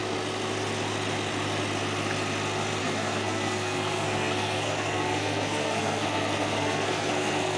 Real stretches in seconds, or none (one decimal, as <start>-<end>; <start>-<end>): 0.0-2.8